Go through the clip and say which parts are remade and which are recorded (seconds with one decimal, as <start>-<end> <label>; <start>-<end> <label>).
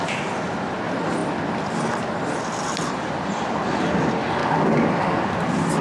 0.0-4.4 recorded; 4.4-5.2 remade; 5.2-5.8 recorded